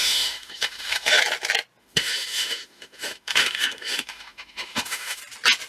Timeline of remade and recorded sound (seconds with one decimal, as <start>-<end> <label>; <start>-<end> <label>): 0.0-1.2 remade; 1.2-1.8 recorded; 1.8-5.2 remade; 5.2-5.7 recorded